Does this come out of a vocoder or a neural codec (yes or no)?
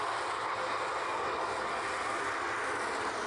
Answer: no